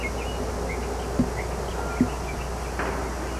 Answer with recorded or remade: recorded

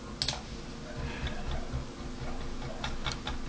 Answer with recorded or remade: recorded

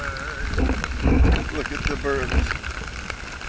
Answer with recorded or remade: recorded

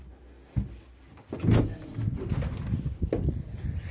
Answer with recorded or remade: recorded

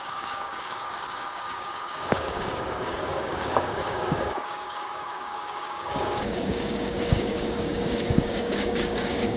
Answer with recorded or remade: remade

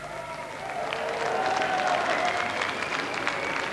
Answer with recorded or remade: recorded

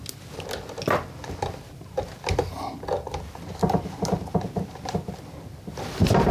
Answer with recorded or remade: recorded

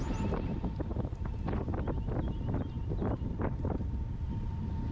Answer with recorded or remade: recorded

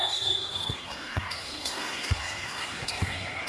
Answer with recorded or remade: remade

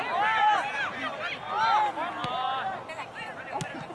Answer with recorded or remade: recorded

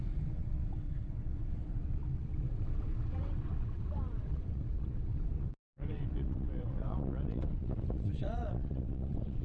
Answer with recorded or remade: remade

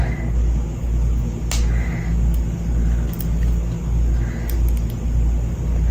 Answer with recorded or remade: recorded